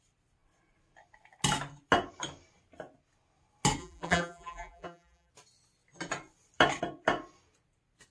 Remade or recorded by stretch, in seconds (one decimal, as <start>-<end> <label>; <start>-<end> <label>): 0.0-3.8 recorded; 3.8-5.3 remade; 5.3-8.1 recorded